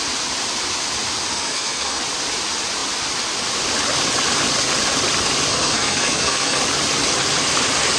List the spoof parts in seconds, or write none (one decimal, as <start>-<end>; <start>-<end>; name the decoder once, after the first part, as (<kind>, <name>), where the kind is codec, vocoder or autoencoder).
1.3-2.0 (codec, SNAC); 5.5-6.6